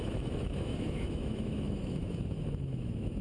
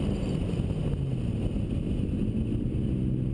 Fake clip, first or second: first